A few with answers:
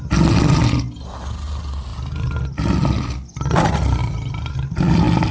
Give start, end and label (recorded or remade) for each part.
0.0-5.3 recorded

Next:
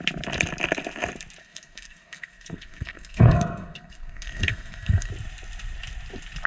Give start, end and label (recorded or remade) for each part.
0.0-1.4 recorded; 1.4-5.1 remade; 5.1-6.5 recorded

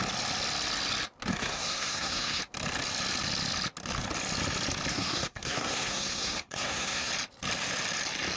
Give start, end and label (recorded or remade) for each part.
0.0-1.3 recorded; 1.3-2.4 remade; 2.4-4.9 recorded; 4.9-7.1 remade; 7.1-8.4 recorded

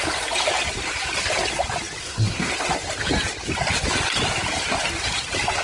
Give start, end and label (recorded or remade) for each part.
0.0-2.0 recorded; 2.0-2.5 remade; 2.5-5.6 recorded

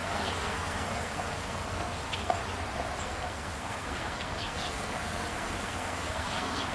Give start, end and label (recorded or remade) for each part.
0.0-2.4 remade; 2.4-3.0 recorded; 3.0-6.7 remade

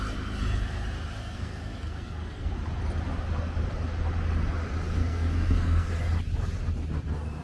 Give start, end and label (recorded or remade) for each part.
0.0-1.2 recorded; 1.2-2.5 remade; 2.5-5.0 recorded; 5.0-5.9 remade; 5.9-7.4 recorded